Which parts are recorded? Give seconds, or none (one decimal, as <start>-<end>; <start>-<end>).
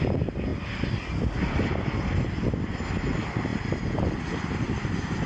0.0-5.3